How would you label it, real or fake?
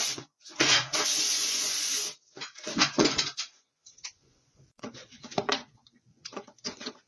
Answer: fake